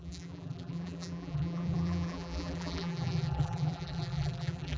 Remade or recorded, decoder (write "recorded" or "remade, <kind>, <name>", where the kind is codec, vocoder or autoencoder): remade, vocoder, BigVGAN v2